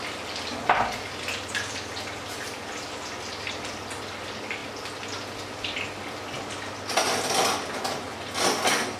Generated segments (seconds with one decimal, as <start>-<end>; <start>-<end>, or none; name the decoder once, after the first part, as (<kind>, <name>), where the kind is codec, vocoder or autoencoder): none